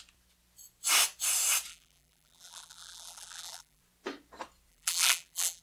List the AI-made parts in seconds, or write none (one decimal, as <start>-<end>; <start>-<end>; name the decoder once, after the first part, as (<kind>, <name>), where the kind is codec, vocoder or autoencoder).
1.7-3.8 (vocoder, BigVGAN v2); 4.7-5.6